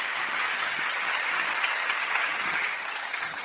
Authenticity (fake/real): fake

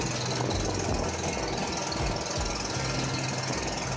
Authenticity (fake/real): real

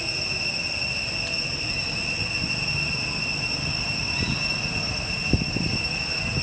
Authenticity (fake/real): real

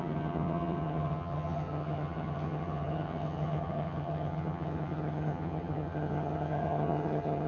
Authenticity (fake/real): fake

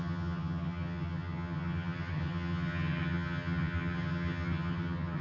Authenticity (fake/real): fake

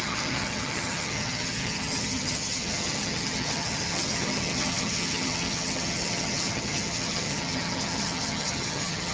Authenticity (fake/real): fake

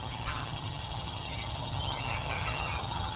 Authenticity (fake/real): fake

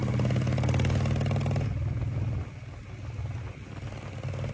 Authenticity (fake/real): real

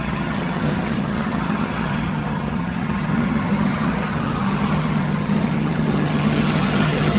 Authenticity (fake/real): fake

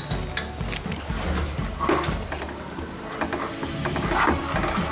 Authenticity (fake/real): real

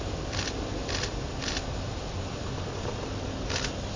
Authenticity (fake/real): real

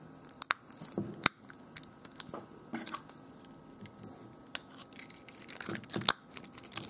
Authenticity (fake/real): real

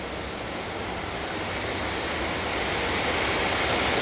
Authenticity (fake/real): real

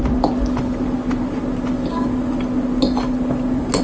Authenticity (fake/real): real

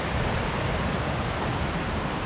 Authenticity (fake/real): real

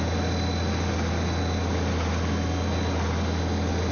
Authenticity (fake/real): real